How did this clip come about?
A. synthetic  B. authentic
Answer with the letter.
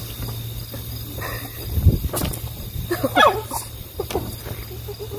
B